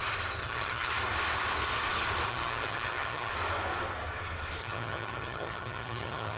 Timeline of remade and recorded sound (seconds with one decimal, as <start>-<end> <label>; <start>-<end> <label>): 0.0-0.4 recorded; 0.4-0.9 remade; 0.9-2.3 recorded; 2.3-3.3 remade; 3.3-4.6 recorded; 4.6-6.4 remade